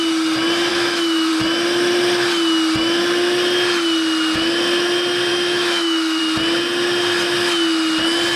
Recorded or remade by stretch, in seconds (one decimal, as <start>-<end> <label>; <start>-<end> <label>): 0.0-0.7 recorded; 0.7-1.3 remade; 1.3-5.3 recorded; 5.3-6.2 remade; 6.2-8.4 recorded